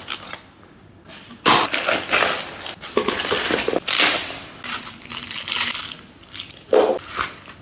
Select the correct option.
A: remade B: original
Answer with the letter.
B